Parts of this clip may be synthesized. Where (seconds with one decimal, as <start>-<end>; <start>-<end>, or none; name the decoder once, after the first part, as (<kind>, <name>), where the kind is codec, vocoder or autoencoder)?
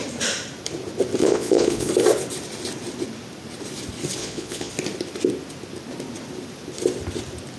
1.2-1.9 (vocoder, Vocos); 4.2-4.7